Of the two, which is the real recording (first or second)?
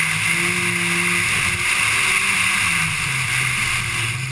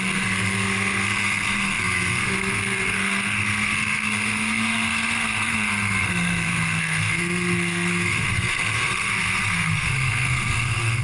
first